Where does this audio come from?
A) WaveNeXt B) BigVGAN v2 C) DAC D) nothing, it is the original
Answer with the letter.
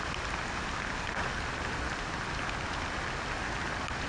D